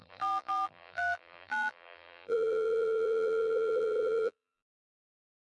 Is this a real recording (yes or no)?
no